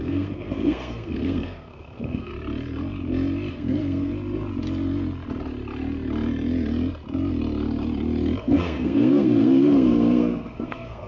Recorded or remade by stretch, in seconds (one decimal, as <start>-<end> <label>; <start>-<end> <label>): 0.0-2.3 remade; 2.3-3.5 recorded; 3.5-4.1 remade; 4.1-8.4 recorded; 8.4-11.1 remade